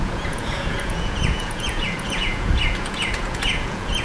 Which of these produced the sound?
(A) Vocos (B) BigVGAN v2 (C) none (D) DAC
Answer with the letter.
A